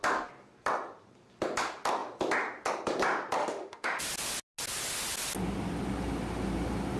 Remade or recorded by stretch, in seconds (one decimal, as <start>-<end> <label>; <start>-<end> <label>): 0.0-3.4 recorded; 3.4-4.0 remade; 4.0-7.0 recorded